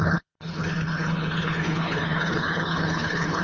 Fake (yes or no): yes